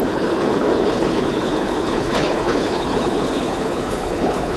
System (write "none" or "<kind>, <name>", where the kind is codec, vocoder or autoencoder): codec, HILCodec